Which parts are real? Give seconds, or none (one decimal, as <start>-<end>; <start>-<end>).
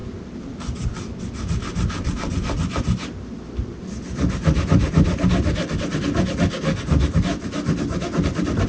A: 0.0-8.7